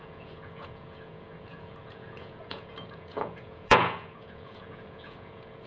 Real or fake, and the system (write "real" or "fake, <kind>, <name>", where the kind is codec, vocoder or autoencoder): fake, vocoder, Vocos